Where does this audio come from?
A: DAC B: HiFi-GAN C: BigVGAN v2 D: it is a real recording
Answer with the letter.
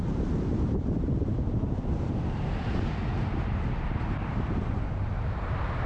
C